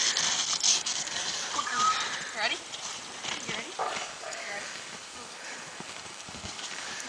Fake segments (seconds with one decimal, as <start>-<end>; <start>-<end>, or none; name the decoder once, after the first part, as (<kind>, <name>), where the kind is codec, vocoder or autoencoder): 0.7-1.5 (codec, DAC); 3.8-7.1